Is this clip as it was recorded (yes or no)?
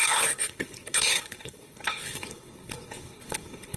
no